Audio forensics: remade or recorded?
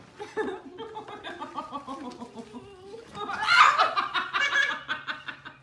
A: recorded